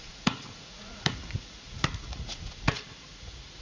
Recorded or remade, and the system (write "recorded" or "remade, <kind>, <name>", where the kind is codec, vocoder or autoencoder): remade, vocoder, Vocos